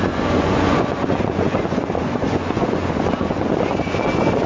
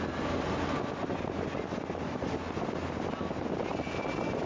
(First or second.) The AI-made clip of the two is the first